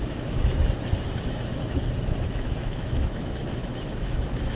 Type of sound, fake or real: fake